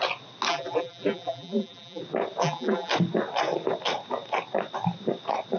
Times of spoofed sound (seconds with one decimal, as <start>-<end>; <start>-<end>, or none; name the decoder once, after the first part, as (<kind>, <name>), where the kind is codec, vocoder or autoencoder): 0.5-2.0 (vocoder, BigVGAN v2); 2.4-2.9